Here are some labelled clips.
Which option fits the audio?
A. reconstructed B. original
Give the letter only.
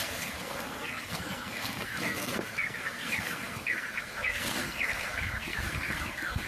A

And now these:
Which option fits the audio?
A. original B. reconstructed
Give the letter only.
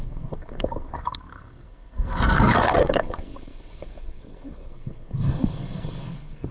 B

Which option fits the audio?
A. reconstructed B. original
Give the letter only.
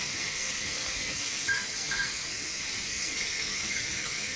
A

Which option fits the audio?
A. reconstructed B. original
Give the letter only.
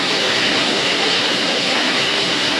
A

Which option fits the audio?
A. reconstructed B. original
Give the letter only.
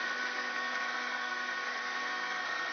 A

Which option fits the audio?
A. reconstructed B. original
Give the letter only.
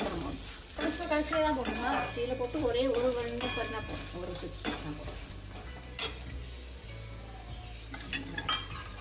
B